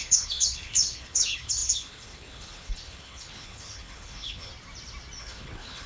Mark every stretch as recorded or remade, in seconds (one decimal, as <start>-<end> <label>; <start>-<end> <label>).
0.0-4.5 remade; 4.5-5.2 recorded; 5.2-5.9 remade